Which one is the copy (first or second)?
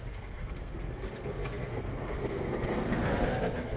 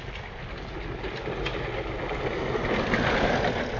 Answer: first